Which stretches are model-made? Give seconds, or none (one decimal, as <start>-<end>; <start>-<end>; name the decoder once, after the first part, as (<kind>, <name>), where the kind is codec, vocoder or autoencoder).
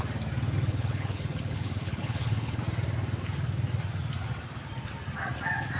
0.7-2.6 (codec, HILCodec)